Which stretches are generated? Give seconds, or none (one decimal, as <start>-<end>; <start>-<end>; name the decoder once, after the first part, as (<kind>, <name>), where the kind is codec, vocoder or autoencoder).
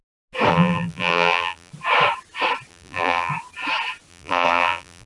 0.5-1.7 (vocoder, BigVGAN v2); 2.7-3.3; 4.1-5.1